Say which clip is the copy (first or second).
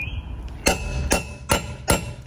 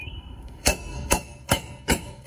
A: second